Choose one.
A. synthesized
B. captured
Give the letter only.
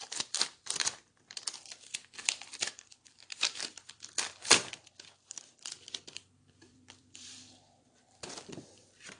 A